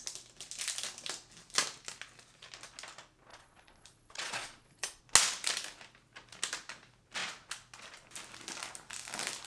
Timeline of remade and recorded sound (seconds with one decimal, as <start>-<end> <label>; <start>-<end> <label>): 0.0-3.3 recorded; 3.3-5.0 remade; 5.0-9.5 recorded